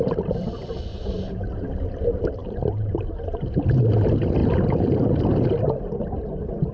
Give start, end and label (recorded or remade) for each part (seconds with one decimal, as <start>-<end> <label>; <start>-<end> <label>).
0.0-0.9 recorded; 0.9-1.7 remade; 1.7-2.4 recorded; 2.4-3.0 remade; 3.0-6.7 recorded